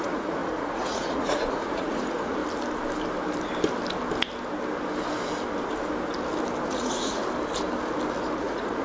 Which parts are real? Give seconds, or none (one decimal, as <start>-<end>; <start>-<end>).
2.4-6.7; 7.2-8.4